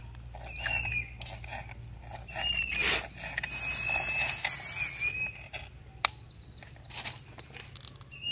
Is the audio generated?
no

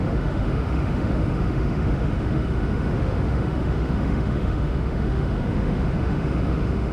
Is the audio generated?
yes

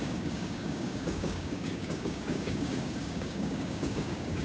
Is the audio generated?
yes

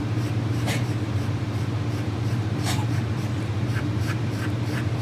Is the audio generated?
yes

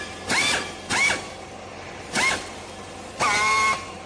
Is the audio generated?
yes